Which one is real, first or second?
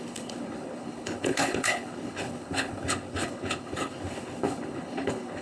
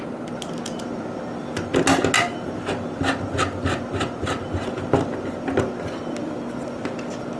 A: second